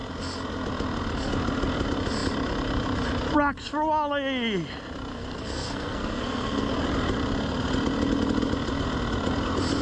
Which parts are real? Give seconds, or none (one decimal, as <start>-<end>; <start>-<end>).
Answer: 0.0-5.1; 6.7-9.8